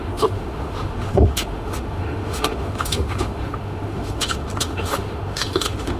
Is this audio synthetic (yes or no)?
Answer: yes